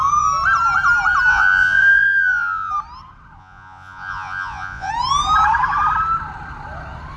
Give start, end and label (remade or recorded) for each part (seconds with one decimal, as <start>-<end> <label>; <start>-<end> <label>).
0.0-1.3 recorded; 1.3-2.7 remade; 2.7-3.4 recorded; 3.4-4.9 remade; 4.9-7.2 recorded